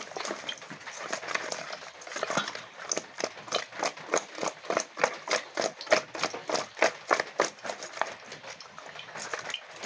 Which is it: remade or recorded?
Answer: recorded